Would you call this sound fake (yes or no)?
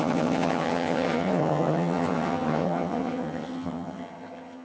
yes